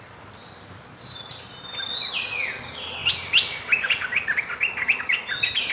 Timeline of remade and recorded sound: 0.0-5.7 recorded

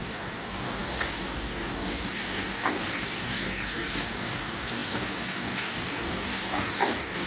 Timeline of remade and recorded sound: 0.0-7.3 remade